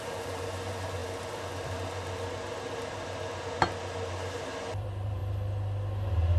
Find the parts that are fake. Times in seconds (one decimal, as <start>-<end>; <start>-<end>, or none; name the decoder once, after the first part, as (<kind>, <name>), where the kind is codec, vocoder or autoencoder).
0.0-1.0 (vocoder, BigVGAN v2); 4.8-5.2